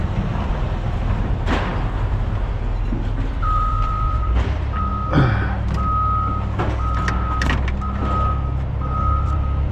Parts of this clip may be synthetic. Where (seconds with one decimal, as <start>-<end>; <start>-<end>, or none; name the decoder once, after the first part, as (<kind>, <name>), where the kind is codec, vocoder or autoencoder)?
0.0-4.9 (vocoder, BigVGAN v2); 8.0-9.7